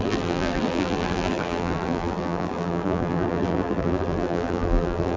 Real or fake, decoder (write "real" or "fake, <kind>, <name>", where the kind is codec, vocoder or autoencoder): fake, vocoder, BigVGAN v2